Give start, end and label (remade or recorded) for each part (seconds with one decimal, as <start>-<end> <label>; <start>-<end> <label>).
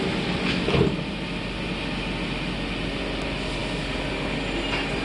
0.0-5.0 recorded